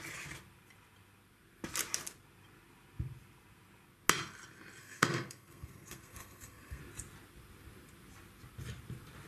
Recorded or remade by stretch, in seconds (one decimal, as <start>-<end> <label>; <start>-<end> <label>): 0.0-4.8 recorded; 4.8-6.8 remade; 6.8-9.3 recorded

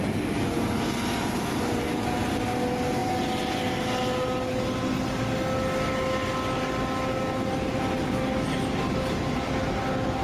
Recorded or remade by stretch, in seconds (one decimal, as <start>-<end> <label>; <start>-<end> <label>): 0.0-10.2 recorded

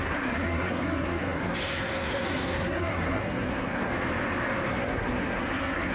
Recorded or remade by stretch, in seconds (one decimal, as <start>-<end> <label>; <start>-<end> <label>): 0.0-3.9 remade; 3.9-4.7 recorded; 4.7-5.9 remade